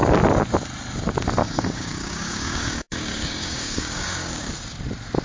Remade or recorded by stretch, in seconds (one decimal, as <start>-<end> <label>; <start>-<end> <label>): 0.0-1.4 recorded; 1.4-4.5 remade; 4.5-5.2 recorded